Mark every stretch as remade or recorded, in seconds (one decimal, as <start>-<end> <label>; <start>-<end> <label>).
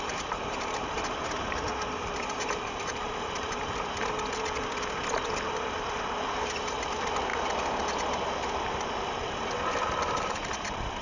0.0-1.7 remade; 1.7-2.7 recorded; 2.7-3.6 remade; 3.6-5.9 recorded; 5.9-7.3 remade; 7.3-8.1 recorded; 8.1-11.0 remade